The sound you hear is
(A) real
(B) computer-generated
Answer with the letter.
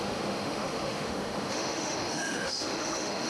B